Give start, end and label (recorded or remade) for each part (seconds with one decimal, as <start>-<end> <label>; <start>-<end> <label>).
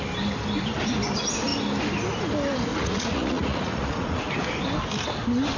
0.0-2.7 recorded; 2.7-4.2 remade; 4.2-5.6 recorded